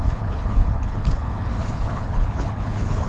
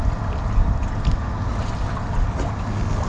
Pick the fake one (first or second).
first